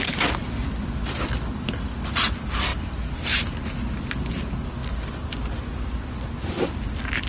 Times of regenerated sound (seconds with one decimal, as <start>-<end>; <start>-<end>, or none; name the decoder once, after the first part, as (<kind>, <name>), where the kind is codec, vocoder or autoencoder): none